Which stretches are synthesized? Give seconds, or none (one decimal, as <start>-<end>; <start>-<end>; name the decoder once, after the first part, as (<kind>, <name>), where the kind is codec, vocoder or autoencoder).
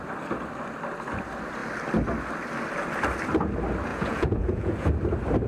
3.9-4.9 (vocoder, Vocos)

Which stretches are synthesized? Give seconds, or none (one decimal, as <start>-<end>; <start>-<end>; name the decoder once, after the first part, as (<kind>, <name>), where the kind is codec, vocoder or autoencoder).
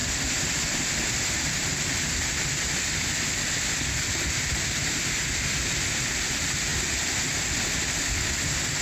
none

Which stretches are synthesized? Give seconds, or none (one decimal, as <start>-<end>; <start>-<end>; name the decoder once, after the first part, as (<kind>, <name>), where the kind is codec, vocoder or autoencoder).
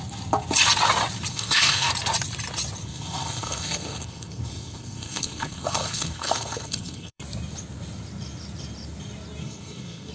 1.3-1.9 (codec, SNAC); 2.8-7.2; 9.4-10.1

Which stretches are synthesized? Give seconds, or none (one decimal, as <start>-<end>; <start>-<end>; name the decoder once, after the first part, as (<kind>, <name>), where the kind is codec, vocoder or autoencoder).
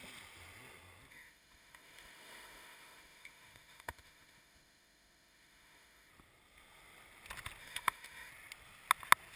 1.1-6.1 (autoencoder, DAC-VAE); 7.6-8.3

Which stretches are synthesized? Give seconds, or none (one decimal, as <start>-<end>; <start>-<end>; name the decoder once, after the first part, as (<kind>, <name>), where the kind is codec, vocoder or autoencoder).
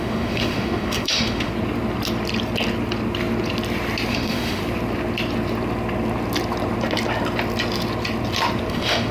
0.0-1.5 (autoencoder, DAC-VAE); 4.1-4.6; 8.7-9.1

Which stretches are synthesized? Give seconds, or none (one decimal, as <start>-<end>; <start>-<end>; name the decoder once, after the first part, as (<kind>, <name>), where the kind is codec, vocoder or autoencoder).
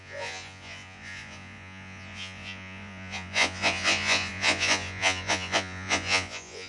0.0-6.7 (vocoder, Vocos)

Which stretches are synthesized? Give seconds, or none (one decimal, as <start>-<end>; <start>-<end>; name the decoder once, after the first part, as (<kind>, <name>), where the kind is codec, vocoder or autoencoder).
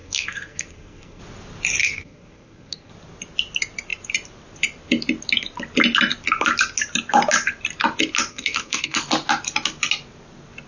0.0-1.2 (codec, SNAC); 1.8-2.9; 8.3-9.0